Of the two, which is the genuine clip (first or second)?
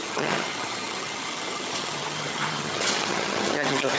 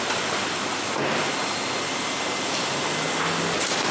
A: second